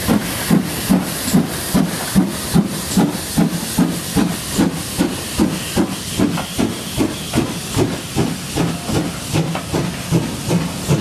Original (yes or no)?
yes